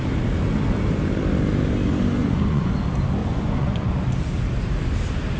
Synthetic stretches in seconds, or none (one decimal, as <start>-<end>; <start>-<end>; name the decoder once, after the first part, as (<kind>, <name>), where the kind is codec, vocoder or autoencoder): 2.2-2.7 (vocoder, Vocos); 3.2-3.9